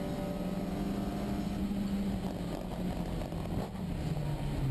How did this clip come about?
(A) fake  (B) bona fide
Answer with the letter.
B